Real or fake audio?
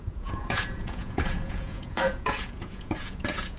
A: fake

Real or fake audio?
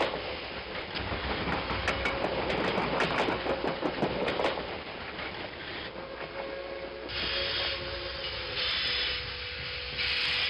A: real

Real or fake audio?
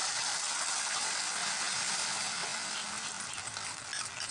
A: real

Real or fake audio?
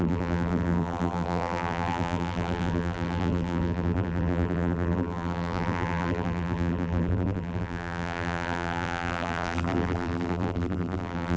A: fake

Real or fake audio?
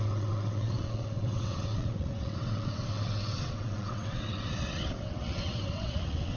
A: fake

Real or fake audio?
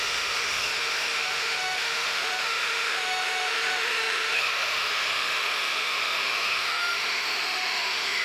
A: fake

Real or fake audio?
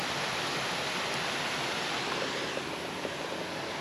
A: real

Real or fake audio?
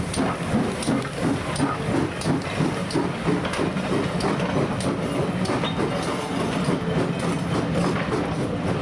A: real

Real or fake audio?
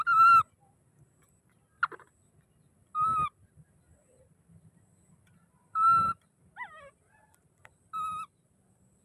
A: real